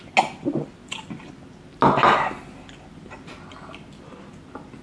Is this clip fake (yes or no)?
no